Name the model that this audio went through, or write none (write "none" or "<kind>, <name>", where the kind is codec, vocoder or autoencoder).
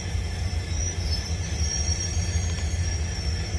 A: none